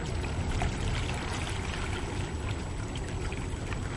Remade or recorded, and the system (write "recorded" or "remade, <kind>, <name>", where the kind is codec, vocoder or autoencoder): recorded